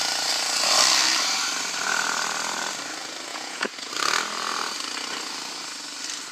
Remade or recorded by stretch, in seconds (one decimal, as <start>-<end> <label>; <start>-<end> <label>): 0.0-3.3 recorded; 3.3-3.9 remade; 3.9-6.3 recorded